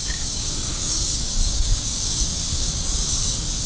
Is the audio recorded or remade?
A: remade